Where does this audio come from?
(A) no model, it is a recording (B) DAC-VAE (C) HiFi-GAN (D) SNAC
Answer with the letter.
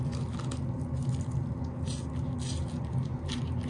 A